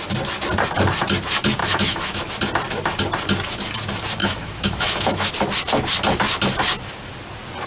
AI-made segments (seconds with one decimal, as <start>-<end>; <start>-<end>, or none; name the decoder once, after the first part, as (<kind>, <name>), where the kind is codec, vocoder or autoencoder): 1.6-2.2 (autoencoder, DAC-VAE); 4.2-5.3